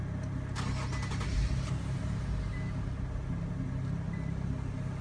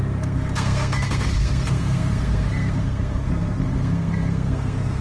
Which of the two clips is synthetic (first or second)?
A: second